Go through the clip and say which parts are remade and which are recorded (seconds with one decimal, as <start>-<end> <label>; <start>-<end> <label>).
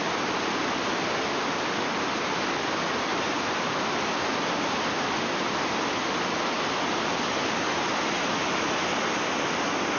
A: 0.0-10.0 recorded